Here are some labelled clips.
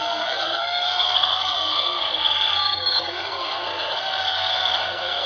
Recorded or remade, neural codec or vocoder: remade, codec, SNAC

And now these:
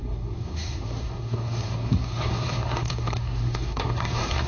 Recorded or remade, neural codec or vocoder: remade, codec, SNAC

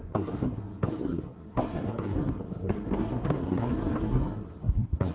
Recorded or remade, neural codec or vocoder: remade, codec, SNAC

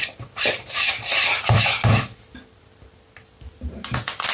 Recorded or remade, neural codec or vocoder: recorded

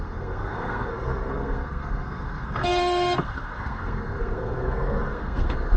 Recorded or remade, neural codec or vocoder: remade, codec, SNAC